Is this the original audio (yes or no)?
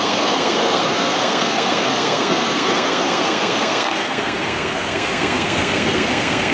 no